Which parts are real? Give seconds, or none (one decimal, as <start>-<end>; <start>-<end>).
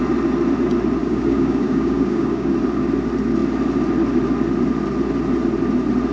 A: 0.0-1.0; 2.5-6.1